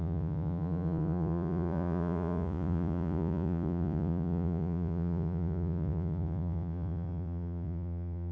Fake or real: fake